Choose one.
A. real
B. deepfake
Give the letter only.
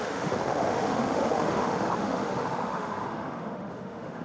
B